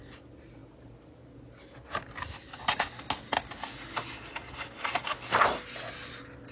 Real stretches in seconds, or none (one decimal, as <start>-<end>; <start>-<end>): 0.0-6.5